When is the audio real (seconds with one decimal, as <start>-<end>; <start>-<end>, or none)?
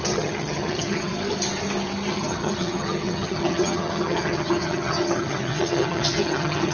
1.1-2.1